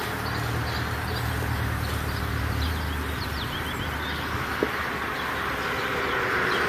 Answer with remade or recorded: recorded